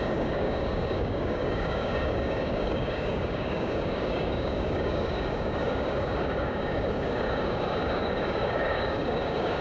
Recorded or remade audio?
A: remade